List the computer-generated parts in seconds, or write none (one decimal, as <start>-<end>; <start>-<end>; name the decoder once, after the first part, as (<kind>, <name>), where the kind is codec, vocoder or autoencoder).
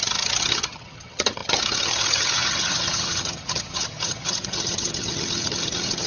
0.0-6.1 (vocoder, HiFi-GAN)